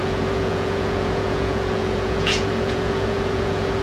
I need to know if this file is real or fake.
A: fake